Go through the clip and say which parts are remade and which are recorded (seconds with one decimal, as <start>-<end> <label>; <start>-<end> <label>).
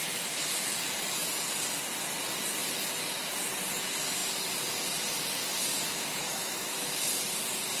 0.0-5.9 recorded; 5.9-7.1 remade; 7.1-7.8 recorded